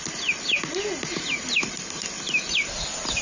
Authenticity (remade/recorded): recorded